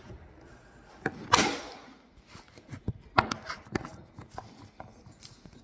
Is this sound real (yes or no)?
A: yes